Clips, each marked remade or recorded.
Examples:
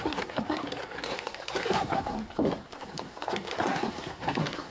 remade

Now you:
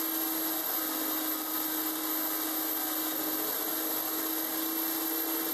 recorded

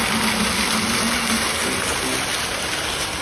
recorded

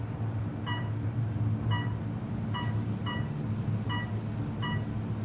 recorded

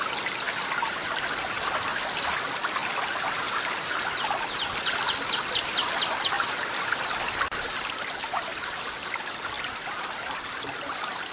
recorded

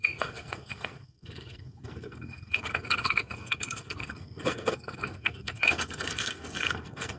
remade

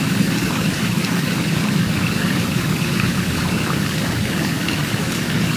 remade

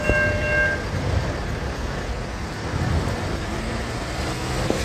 recorded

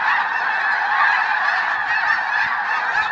recorded